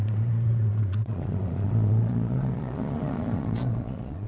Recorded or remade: remade